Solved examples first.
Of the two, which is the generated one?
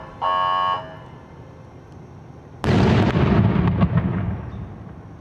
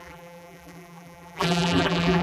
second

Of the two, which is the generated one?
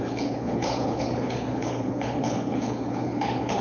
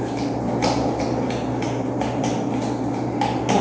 first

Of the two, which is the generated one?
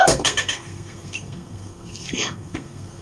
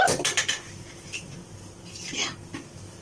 first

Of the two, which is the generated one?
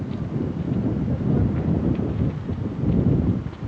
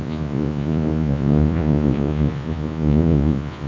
second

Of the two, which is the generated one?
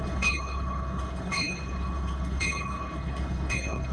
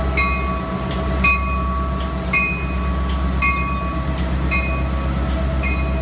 first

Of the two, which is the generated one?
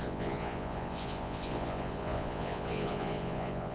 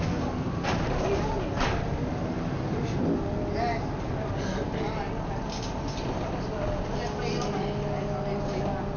first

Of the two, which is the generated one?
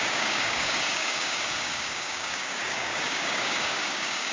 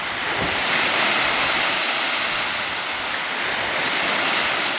first